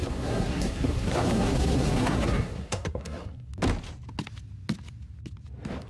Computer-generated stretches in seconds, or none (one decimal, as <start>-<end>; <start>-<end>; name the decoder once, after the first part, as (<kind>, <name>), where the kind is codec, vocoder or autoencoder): 0.0-3.5 (codec, SNAC)